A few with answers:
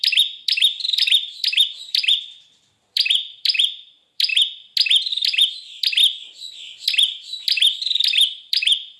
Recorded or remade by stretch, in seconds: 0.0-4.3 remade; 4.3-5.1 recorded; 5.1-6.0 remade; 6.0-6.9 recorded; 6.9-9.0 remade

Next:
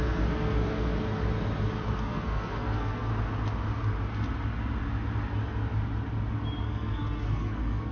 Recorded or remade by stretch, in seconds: 0.0-0.9 remade; 0.9-2.0 recorded; 2.0-3.1 remade; 3.1-6.6 recorded; 6.6-7.9 remade

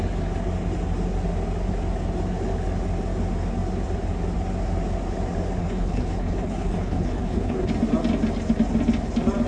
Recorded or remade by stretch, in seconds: 0.0-5.6 recorded; 5.6-7.7 remade; 7.7-9.5 recorded

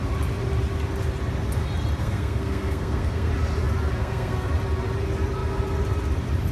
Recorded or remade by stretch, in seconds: 0.0-2.0 recorded; 2.0-3.3 remade; 3.3-4.0 recorded; 4.0-4.5 remade; 4.5-6.5 recorded

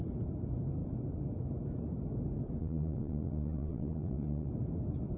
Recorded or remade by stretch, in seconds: 0.0-2.6 recorded; 2.6-4.5 remade; 4.5-5.2 recorded